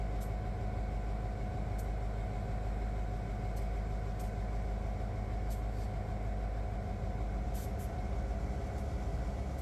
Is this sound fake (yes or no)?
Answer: no